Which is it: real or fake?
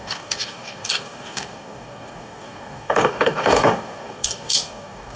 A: fake